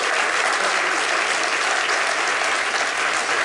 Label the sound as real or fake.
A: real